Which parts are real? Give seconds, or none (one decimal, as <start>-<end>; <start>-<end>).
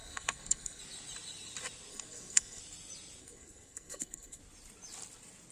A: 0.8-1.9; 2.6-3.2; 4.4-5.5